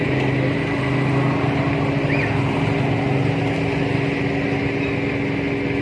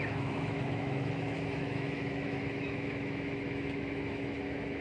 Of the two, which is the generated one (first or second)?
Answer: second